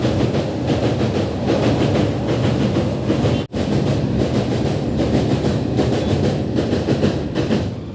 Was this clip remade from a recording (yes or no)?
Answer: no